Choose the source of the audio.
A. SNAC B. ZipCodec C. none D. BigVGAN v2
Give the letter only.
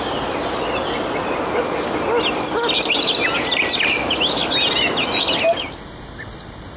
C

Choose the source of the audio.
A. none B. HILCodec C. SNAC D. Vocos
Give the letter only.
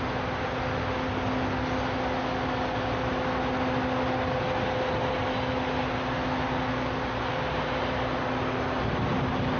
A